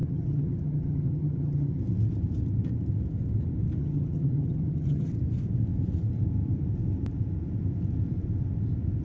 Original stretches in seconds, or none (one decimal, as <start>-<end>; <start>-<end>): 1.8-3.8; 5.1-9.0